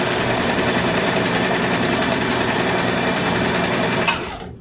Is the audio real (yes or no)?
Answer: no